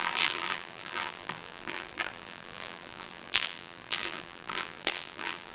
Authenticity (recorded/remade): remade